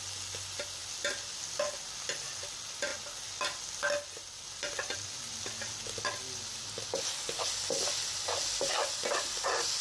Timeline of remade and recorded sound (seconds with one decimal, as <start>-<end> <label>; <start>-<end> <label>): 0.0-9.8 recorded